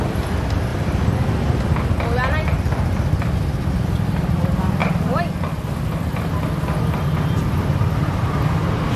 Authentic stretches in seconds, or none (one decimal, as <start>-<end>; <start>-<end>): 0.0-9.0